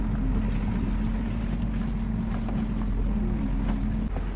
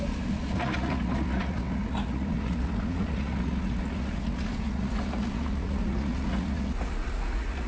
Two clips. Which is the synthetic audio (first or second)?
second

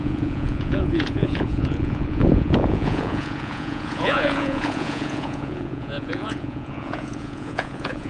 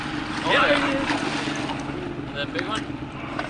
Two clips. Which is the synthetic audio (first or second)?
first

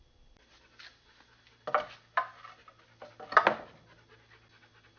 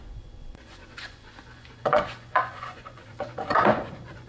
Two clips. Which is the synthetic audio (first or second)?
second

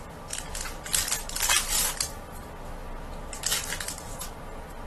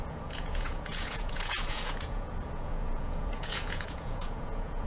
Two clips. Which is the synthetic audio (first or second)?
second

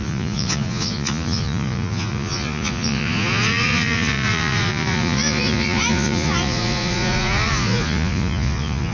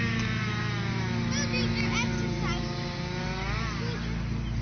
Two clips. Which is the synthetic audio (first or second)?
first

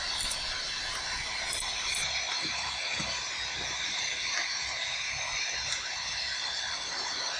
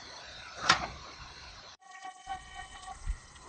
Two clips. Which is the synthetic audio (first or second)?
second